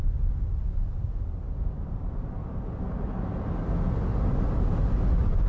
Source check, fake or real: real